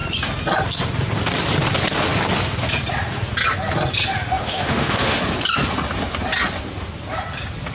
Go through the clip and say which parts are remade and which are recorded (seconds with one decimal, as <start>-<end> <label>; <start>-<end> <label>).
0.0-4.1 recorded; 4.1-5.2 remade; 5.2-7.7 recorded